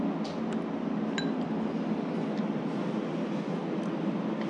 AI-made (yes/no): no